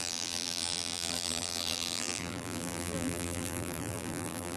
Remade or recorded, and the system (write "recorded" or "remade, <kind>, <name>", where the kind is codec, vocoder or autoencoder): remade, vocoder, BigVGAN v2